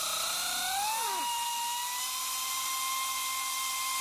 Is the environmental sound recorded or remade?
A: recorded